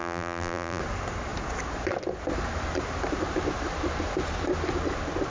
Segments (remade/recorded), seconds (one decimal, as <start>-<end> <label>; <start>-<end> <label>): 0.0-0.8 remade; 0.8-5.3 recorded